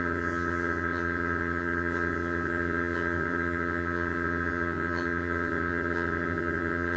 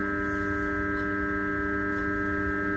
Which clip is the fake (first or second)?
first